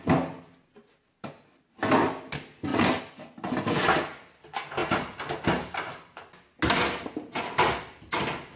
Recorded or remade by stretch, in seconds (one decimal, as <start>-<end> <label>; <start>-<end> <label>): 0.0-8.6 recorded